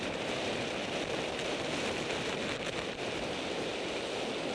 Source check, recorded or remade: recorded